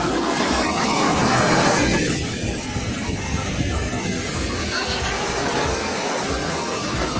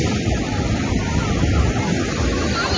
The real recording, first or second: second